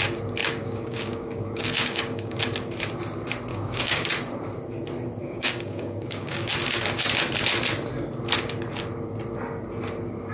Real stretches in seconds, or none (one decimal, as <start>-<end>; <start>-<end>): 0.0-0.4; 2.4-3.5; 4.1-5.2; 6.5-10.3